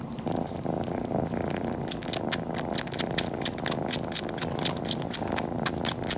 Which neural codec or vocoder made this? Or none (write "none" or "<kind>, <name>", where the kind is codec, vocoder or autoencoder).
none